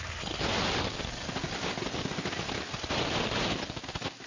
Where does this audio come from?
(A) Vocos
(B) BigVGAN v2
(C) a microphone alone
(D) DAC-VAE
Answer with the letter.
C